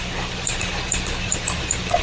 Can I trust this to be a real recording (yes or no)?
yes